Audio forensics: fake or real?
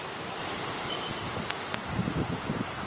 real